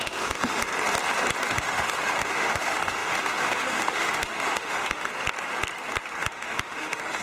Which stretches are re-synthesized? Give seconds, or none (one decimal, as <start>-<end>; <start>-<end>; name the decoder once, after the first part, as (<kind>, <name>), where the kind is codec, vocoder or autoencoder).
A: 0.0-0.7 (autoencoder, DAC-VAE); 1.5-5.1; 6.2-7.2

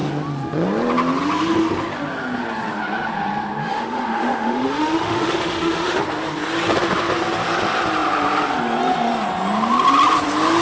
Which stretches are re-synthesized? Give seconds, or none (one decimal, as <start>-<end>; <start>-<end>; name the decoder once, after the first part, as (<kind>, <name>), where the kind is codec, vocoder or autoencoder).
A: 3.6-6.0 (autoencoder, DAC-VAE)

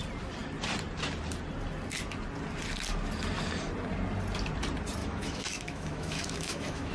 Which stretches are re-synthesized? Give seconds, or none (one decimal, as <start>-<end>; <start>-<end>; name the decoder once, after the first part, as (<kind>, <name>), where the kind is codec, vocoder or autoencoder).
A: 5.0-6.9 (autoencoder, DAC-VAE)

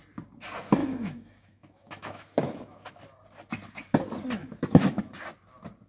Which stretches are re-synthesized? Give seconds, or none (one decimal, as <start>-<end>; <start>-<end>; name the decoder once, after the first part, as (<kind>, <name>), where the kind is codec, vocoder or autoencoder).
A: 0.8-3.0 (autoencoder, DAC-VAE); 4.4-5.0

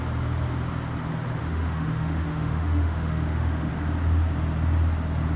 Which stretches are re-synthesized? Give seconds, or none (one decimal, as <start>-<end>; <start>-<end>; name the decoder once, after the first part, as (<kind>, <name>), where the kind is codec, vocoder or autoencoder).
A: 1.4-3.7 (autoencoder, DAC-VAE)

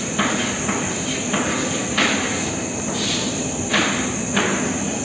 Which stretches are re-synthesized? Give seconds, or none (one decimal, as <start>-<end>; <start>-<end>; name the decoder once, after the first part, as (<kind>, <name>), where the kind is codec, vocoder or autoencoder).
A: none